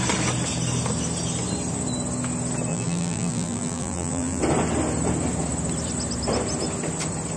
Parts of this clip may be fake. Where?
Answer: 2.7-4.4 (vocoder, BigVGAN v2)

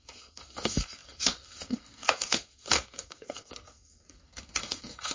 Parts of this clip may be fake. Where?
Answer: 0.0-5.1 (codec, SNAC)